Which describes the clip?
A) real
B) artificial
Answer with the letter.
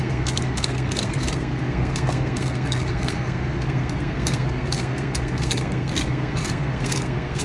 B